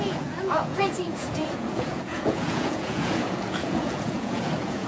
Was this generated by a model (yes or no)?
yes